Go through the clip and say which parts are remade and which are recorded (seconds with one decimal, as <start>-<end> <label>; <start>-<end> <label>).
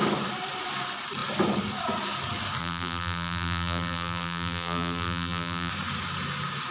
0.0-2.6 recorded; 2.6-5.7 remade; 5.7-6.7 recorded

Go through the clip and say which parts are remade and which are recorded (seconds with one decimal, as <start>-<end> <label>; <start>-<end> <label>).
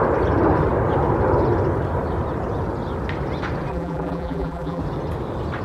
0.0-3.7 recorded; 3.7-4.8 remade; 4.8-5.6 recorded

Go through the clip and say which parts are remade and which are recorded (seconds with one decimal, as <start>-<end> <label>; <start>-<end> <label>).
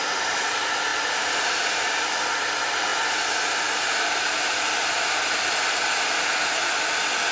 0.0-0.9 recorded; 0.9-2.2 remade; 2.2-7.3 recorded